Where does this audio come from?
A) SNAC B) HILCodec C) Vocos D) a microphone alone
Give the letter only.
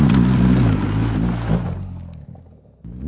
D